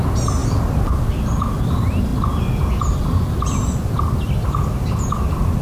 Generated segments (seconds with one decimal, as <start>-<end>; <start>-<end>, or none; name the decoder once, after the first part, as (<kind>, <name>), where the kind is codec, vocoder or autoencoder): none